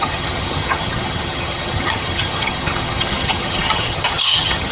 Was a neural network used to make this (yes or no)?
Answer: yes